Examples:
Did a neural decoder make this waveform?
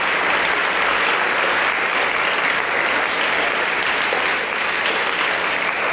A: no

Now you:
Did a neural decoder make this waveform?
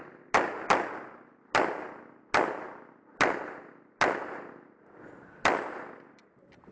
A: no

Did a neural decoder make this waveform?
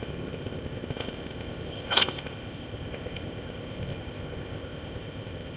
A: yes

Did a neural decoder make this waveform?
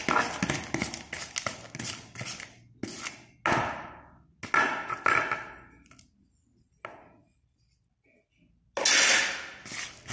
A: no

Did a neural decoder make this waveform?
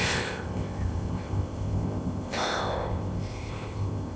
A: yes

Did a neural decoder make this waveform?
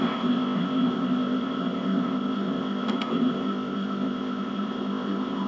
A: yes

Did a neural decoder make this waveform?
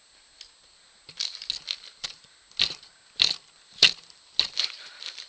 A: no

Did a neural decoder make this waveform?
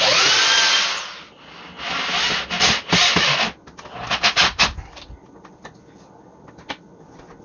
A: no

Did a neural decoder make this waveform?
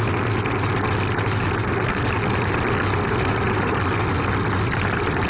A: no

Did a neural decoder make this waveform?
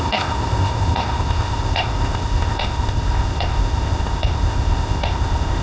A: yes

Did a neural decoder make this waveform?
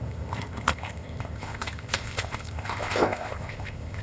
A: yes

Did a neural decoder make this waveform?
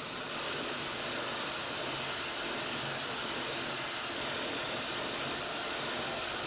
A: no